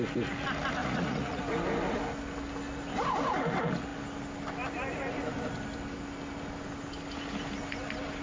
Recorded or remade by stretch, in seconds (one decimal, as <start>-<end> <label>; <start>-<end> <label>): 0.0-0.8 recorded; 0.8-1.4 remade; 1.4-8.2 recorded